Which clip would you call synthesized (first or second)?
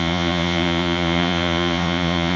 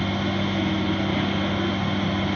first